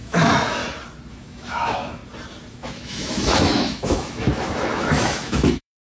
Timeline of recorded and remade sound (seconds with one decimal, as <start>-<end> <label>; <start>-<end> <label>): 0.0-0.6 remade; 0.6-1.1 recorded; 1.1-2.0 remade; 2.0-2.5 recorded; 2.5-5.9 remade